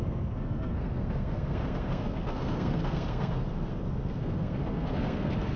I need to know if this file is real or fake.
fake